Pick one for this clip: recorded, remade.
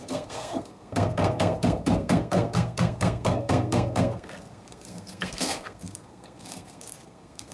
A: remade